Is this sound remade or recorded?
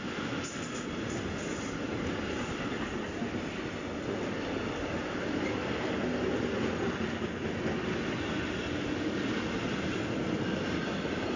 recorded